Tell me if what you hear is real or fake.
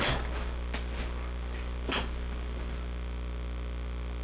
real